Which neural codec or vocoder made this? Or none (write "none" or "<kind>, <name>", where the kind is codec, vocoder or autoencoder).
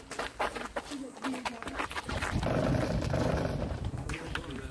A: none